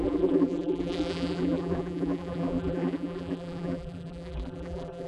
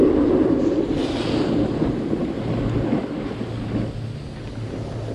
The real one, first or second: second